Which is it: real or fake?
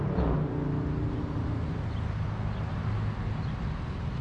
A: real